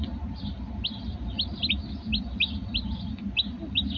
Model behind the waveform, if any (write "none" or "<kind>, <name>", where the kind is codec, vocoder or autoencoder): none